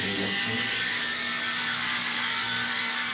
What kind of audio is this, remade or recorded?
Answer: remade